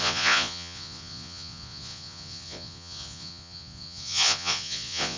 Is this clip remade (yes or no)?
yes